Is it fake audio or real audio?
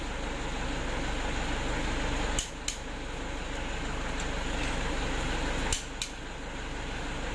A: real